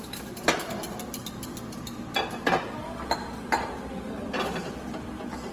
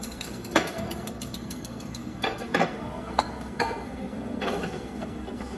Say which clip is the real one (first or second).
first